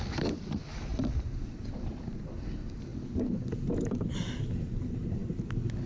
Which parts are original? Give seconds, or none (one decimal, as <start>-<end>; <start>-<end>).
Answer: 0.0-0.9; 2.3-5.9